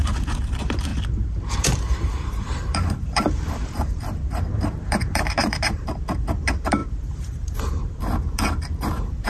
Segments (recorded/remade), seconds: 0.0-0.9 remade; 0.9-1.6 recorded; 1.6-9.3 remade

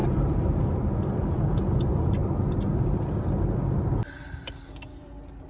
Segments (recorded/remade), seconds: 0.0-0.6 remade; 0.6-5.5 recorded

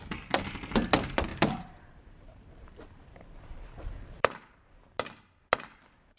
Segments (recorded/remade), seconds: 0.0-1.3 recorded; 1.3-5.0 remade; 5.0-6.2 recorded

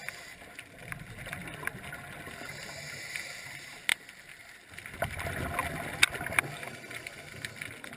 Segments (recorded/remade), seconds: 0.0-8.0 recorded

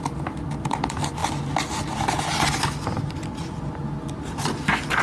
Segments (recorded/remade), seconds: 0.0-5.0 recorded

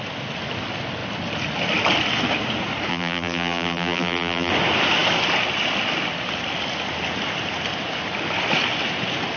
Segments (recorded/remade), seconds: 0.0-2.9 recorded; 2.9-4.5 remade; 4.5-9.4 recorded

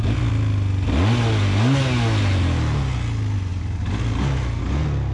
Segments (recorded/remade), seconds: 0.0-5.1 recorded